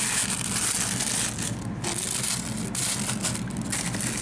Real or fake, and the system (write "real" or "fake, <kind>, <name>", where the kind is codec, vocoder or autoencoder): real